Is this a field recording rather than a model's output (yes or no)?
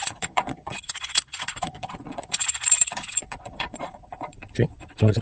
no